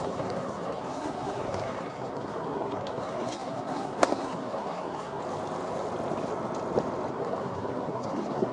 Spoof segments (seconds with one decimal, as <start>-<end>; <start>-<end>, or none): 0.0-5.2; 7.1-8.5